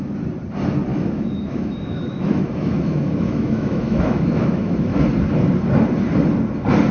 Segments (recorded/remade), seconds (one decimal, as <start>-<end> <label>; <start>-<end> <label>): 0.0-0.9 recorded; 0.9-5.0 remade; 5.0-6.9 recorded